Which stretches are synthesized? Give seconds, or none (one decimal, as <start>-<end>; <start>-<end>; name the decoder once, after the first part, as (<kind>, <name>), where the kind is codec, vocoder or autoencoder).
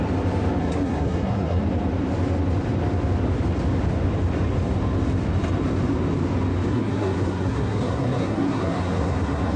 0.6-1.6 (codec, SNAC); 6.7-9.6